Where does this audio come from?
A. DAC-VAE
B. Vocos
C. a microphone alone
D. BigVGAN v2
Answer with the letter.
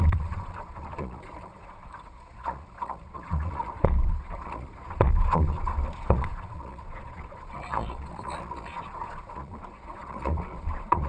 B